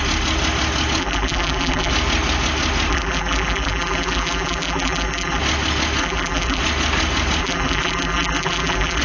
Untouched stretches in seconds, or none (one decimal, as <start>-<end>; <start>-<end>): 0.0-1.0; 1.9-2.9; 5.4-6.0; 6.6-7.4